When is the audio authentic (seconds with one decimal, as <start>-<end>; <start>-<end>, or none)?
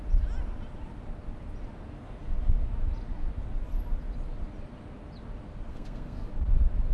0.0-5.7; 6.3-6.9